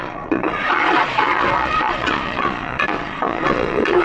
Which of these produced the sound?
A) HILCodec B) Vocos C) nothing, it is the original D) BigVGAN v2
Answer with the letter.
B